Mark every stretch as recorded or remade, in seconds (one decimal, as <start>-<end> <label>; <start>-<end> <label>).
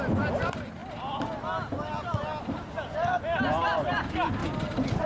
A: 0.0-4.4 recorded; 4.4-5.1 remade